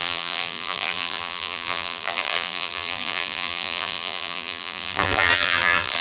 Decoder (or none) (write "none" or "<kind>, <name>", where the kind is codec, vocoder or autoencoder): vocoder, BigVGAN v2